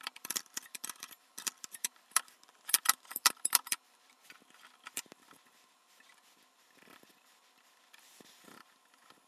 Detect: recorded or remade remade